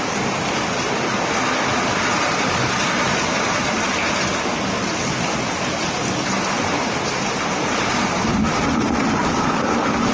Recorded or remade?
recorded